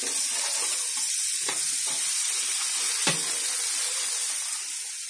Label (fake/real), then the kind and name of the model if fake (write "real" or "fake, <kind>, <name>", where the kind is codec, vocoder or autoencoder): real